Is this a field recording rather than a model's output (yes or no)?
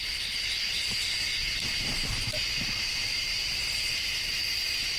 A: yes